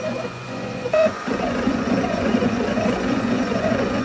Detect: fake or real fake